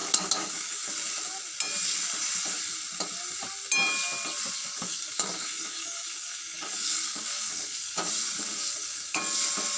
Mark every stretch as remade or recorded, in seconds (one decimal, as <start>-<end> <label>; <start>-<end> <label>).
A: 0.0-0.9 remade; 0.9-4.6 recorded; 4.6-8.1 remade; 8.1-8.6 recorded; 8.6-9.2 remade; 9.2-9.8 recorded